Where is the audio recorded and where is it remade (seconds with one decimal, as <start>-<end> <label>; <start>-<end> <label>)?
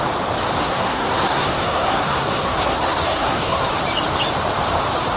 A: 0.0-0.6 recorded; 0.6-3.7 remade; 3.7-5.2 recorded